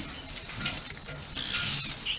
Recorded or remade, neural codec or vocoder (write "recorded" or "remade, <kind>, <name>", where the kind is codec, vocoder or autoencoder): recorded